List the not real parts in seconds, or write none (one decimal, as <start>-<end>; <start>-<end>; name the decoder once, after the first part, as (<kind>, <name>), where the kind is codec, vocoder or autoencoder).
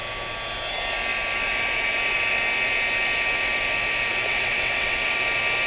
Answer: 4.1-5.2 (vocoder, WaveNeXt)